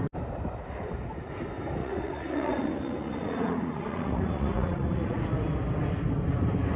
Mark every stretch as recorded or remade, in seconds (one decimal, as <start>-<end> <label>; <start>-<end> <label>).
0.0-1.8 recorded; 1.8-5.2 remade; 5.2-6.8 recorded

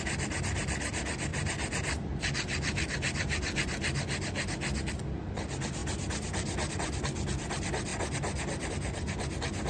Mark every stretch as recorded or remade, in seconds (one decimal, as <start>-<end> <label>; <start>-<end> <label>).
0.0-9.7 recorded

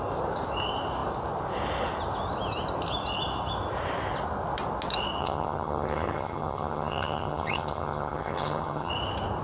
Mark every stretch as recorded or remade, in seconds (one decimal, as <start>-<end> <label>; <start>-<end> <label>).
0.0-5.2 recorded; 5.2-8.9 remade; 8.9-9.4 recorded